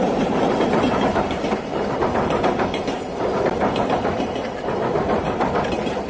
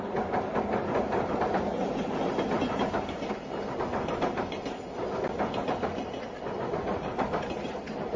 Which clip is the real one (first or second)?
second